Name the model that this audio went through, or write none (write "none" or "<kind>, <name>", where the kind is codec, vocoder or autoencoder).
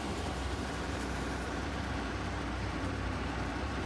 vocoder, BigVGAN v2